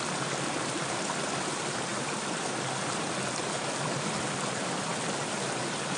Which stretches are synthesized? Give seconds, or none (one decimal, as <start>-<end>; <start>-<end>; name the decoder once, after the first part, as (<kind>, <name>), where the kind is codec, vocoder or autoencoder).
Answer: none